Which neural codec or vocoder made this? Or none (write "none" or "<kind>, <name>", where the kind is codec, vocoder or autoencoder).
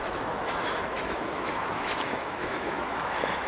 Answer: autoencoder, DAC-VAE